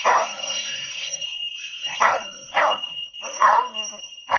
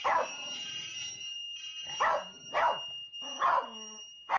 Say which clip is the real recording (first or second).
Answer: second